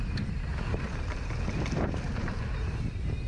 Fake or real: real